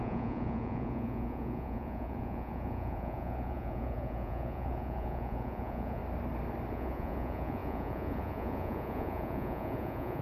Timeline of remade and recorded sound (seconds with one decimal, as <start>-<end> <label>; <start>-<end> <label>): 0.0-6.0 remade; 6.0-6.7 recorded; 6.7-10.2 remade